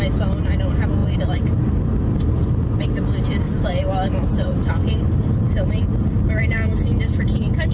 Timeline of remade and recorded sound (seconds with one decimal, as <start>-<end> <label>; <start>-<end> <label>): 0.0-7.7 recorded